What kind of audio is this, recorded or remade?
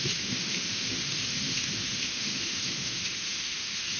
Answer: remade